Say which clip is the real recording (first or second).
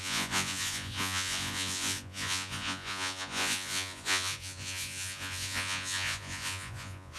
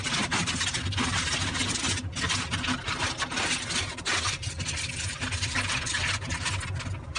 second